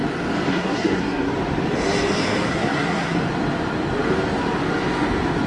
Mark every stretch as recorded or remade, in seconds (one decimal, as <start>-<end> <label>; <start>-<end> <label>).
0.0-0.5 recorded; 0.5-1.3 remade; 1.3-2.5 recorded; 2.5-3.2 remade; 3.2-5.5 recorded